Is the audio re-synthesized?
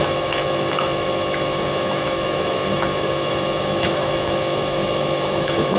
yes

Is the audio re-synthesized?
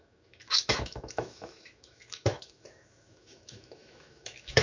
yes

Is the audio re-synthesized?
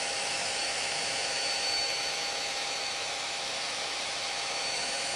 yes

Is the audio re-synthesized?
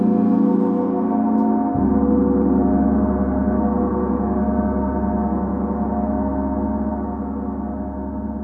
no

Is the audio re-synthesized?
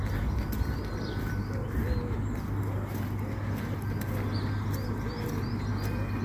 no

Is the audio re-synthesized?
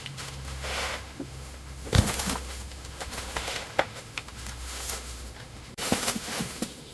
yes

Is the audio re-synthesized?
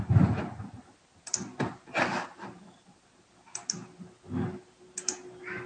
no